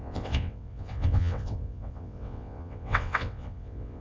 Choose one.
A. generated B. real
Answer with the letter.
A